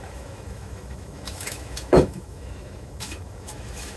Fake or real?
fake